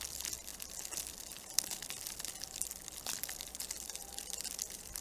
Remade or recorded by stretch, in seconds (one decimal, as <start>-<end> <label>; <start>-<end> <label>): 0.0-5.0 recorded